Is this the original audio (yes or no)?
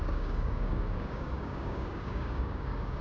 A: no